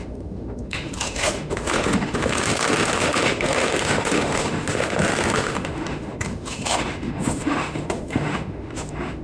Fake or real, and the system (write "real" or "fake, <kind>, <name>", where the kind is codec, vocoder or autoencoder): fake, autoencoder, DAC-VAE